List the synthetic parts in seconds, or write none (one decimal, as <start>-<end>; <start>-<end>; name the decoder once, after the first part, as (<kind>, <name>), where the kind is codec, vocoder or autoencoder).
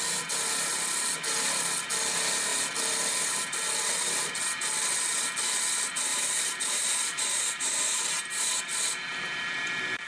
6.1-8.6 (vocoder, BigVGAN v2)